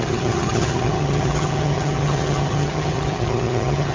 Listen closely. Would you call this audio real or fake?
fake